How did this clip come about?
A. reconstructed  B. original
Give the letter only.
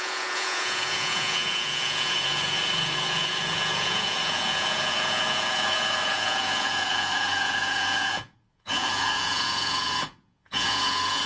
A